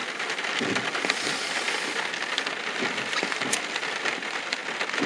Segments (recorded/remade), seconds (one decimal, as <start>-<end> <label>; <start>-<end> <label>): 0.0-5.1 recorded